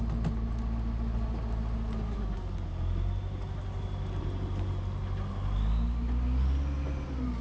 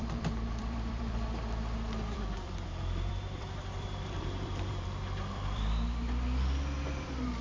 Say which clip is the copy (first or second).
second